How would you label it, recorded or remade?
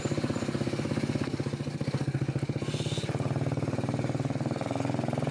recorded